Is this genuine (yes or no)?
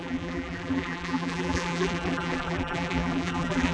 no